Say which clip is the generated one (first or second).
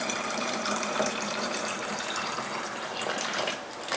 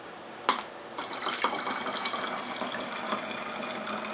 first